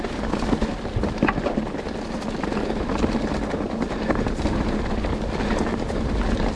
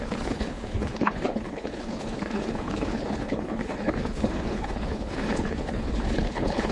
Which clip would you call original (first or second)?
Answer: first